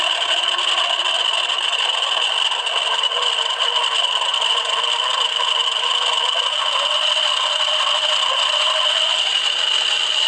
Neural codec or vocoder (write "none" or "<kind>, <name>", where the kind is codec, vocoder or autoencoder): none